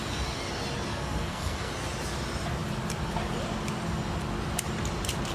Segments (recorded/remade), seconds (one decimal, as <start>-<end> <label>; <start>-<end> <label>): 0.0-0.9 recorded; 0.9-1.7 remade; 1.7-5.3 recorded